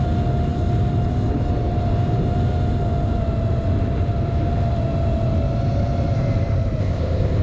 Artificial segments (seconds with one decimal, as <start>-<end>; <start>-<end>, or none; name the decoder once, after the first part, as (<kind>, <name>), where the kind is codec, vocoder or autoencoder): 6.8-7.4 (codec, ZipCodec)